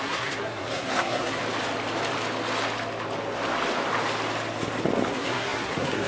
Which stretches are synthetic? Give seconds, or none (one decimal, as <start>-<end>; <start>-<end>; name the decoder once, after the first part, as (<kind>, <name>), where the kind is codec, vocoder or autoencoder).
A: 0.0-1.4 (codec, SNAC); 5.1-6.1

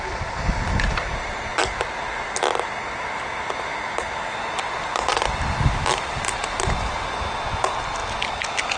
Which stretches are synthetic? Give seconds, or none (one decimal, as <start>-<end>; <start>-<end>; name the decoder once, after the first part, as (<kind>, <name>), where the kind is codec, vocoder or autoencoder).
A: none

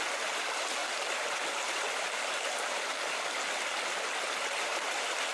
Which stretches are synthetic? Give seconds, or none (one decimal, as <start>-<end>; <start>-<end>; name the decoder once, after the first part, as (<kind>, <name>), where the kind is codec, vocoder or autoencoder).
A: 0.8-3.4 (vocoder, BigVGAN v2); 4.7-5.3

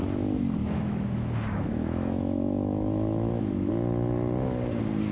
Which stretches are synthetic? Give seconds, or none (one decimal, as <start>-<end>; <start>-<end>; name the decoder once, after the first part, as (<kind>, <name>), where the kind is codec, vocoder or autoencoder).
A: 0.6-3.7 (autoencoder, DAC-VAE)

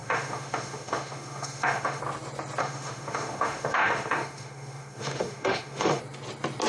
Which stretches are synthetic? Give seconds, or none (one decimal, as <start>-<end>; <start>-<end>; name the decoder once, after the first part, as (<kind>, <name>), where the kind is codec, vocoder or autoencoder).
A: 0.0-2.0 (autoencoder, DAC-VAE); 2.6-6.0

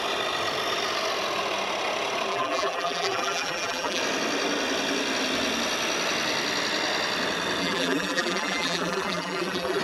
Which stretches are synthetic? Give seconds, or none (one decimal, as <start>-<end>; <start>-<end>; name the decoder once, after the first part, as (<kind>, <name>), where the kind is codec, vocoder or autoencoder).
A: 2.3-4.0 (vocoder, BigVGAN v2); 7.6-9.8